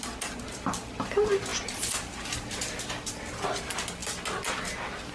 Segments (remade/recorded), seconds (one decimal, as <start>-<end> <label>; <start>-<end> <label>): 0.0-5.1 recorded